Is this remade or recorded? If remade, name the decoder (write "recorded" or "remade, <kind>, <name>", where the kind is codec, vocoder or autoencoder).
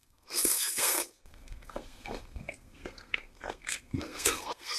remade, codec, SNAC